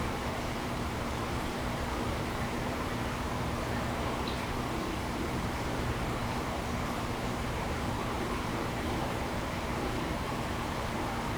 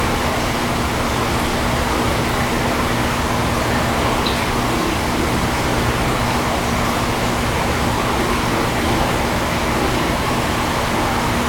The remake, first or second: first